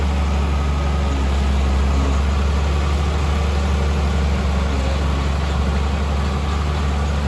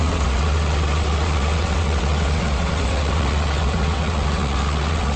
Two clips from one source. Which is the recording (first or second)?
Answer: first